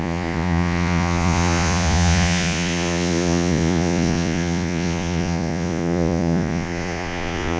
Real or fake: fake